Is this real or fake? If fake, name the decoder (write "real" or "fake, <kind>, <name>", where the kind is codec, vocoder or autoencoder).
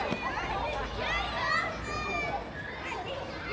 real